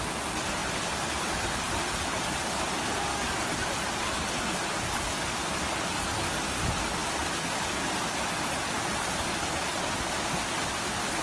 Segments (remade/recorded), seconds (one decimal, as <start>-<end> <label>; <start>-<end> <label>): 0.0-11.2 recorded